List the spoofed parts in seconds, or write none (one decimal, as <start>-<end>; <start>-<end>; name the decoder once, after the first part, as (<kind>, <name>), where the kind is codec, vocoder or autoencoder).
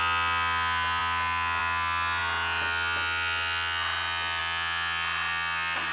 none